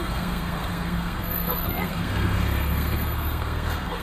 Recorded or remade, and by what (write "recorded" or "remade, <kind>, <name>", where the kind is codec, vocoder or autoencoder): remade, codec, SNAC